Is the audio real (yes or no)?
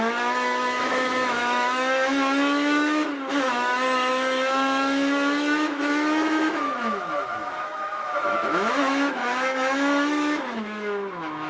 no